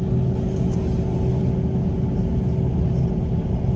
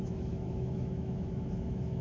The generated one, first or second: second